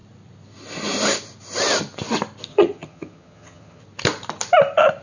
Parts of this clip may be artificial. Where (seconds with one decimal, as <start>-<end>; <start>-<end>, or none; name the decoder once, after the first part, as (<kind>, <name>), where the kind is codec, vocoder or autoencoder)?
2.5-3.8 (vocoder, HiFi-GAN)